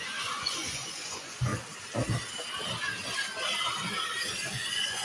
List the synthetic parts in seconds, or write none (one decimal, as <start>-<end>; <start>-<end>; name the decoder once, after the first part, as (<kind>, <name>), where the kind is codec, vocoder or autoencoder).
0.0-1.5 (vocoder, Vocos); 4.5-5.0